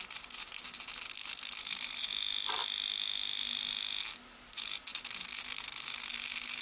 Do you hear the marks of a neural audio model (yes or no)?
no